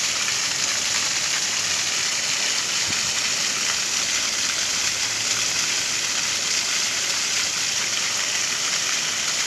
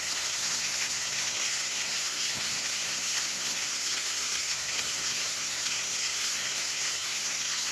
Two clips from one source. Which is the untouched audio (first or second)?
first